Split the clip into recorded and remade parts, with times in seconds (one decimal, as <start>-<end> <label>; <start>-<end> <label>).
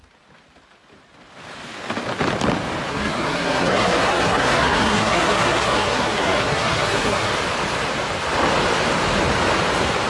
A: 0.0-2.9 recorded; 2.9-7.3 remade; 7.3-10.1 recorded